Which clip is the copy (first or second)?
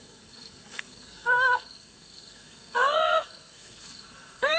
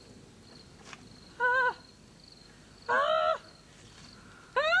first